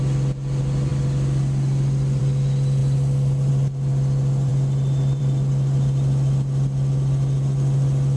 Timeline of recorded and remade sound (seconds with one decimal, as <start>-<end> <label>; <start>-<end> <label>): 0.0-8.2 recorded